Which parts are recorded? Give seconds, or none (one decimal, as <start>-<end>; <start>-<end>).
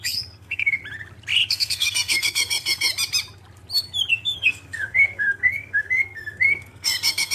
0.8-1.5; 2.9-4.1